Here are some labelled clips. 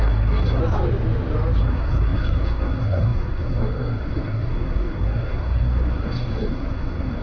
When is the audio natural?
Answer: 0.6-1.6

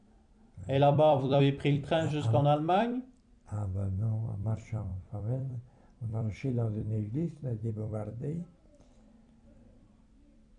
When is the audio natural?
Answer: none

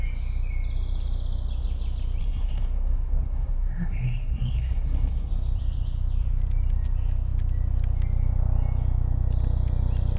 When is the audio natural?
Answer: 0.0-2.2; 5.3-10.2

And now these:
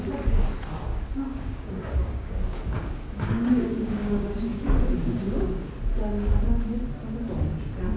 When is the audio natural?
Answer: 0.0-0.9; 5.7-8.0

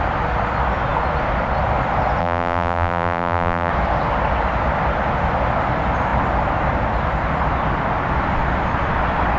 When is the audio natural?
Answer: 0.0-2.2; 3.7-9.4

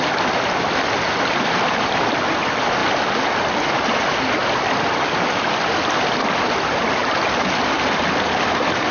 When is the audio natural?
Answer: 0.0-8.9

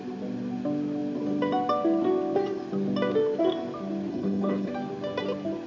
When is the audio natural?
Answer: 0.0-4.1; 4.7-5.7

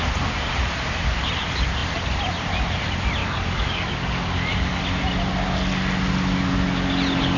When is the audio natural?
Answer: 0.0-3.2; 4.8-7.4